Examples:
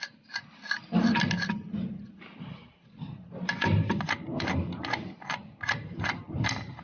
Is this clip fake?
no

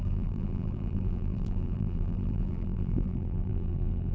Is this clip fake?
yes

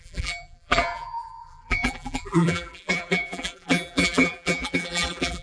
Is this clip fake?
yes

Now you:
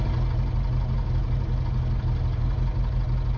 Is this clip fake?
no